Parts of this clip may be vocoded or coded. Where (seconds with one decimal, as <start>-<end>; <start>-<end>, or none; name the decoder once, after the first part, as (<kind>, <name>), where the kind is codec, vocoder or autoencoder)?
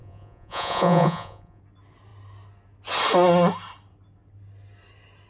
0.0-1.6 (vocoder, Vocos)